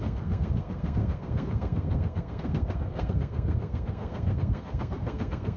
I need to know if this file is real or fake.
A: fake